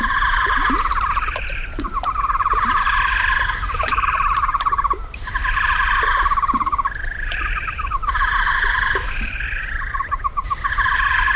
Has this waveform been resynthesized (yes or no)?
yes